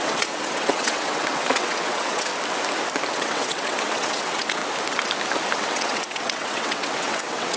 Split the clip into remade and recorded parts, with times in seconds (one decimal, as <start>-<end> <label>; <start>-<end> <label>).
0.0-2.3 remade; 2.3-3.1 recorded; 3.1-4.6 remade; 4.6-5.6 recorded; 5.6-7.6 remade